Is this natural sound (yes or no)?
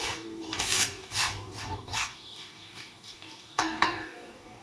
no